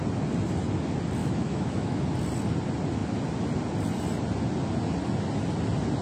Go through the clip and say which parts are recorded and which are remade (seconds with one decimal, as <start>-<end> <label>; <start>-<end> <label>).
0.0-1.2 recorded; 1.2-2.0 remade; 2.0-6.0 recorded